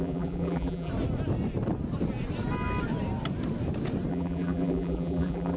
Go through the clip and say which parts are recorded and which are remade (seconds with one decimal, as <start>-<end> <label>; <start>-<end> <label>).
0.0-0.9 remade; 0.9-4.1 recorded; 4.1-5.6 remade